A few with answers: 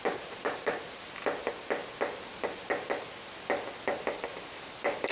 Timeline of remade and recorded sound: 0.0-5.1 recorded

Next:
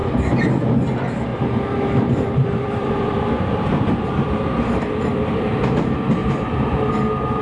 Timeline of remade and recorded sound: 0.0-0.5 remade; 0.5-1.3 recorded; 1.3-5.7 remade; 5.7-6.2 recorded; 6.2-6.9 remade; 6.9-7.4 recorded

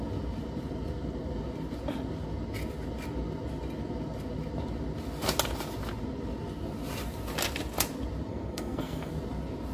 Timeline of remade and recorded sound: 0.0-8.3 recorded; 8.3-9.1 remade; 9.1-9.7 recorded

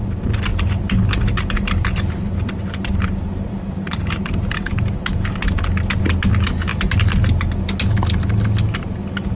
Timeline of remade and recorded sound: 0.0-0.5 recorded; 0.5-5.6 remade; 5.6-9.3 recorded

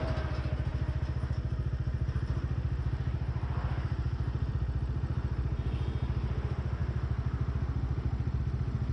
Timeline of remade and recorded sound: 0.0-8.9 recorded

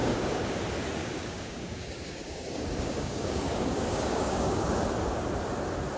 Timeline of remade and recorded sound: 0.0-0.6 remade; 0.6-1.0 recorded; 1.0-4.6 remade; 4.6-6.0 recorded

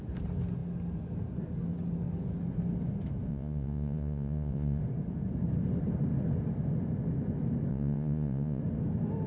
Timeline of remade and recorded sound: 0.0-3.3 recorded; 3.3-4.8 remade; 4.8-7.7 recorded; 7.7-8.6 remade; 8.6-9.3 recorded

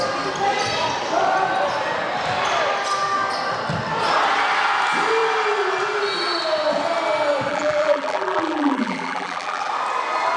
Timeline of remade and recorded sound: 0.0-7.5 recorded; 7.5-9.7 remade; 9.7-10.4 recorded